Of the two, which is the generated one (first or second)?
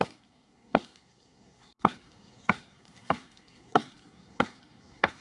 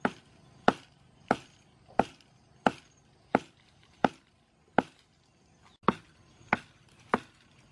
first